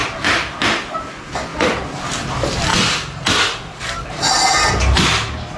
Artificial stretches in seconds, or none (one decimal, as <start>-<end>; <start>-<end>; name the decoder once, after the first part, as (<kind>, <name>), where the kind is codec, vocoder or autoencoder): none